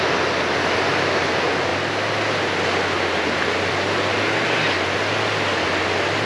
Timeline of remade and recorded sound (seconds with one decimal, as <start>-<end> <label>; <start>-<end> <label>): 0.0-6.3 recorded